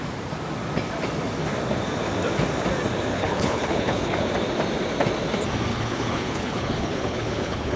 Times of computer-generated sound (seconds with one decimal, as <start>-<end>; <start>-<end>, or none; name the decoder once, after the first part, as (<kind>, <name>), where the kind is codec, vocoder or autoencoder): 3.1-4.2 (codec, HILCodec); 5.7-7.8